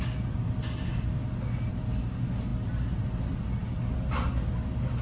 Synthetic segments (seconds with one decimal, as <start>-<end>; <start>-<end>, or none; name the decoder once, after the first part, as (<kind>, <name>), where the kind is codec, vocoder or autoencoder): none